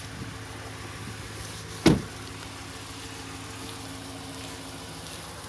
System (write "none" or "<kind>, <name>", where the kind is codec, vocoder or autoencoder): none